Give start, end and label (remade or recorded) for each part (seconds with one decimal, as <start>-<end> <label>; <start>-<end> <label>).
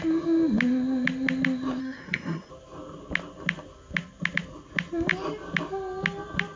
0.0-1.8 recorded; 1.8-2.5 remade; 2.5-6.6 recorded